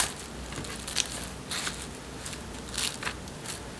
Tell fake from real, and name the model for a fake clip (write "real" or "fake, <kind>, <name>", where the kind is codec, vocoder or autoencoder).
real